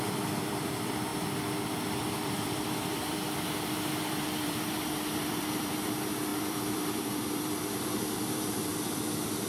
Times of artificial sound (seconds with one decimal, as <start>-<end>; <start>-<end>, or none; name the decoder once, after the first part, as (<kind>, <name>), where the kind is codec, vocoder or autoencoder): 0.0-1.1 (vocoder, BigVGAN v2); 2.0-8.7